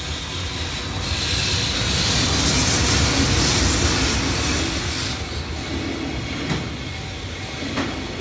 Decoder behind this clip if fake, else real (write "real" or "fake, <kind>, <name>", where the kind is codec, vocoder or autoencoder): real